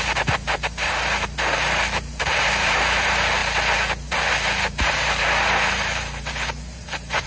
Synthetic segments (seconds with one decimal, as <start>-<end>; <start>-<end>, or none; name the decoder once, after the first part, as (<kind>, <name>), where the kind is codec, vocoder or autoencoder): 0.0-3.4 (vocoder, BigVGAN v2); 4.6-7.3